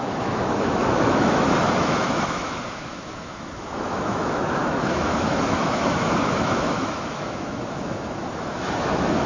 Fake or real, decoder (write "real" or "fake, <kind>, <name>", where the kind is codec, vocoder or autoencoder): fake, autoencoder, DAC-VAE